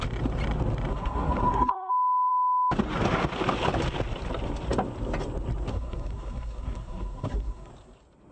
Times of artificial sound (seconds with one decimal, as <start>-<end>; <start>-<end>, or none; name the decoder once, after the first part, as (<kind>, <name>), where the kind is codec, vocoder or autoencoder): 0.9-1.9 (codec, SNAC); 5.7-7.7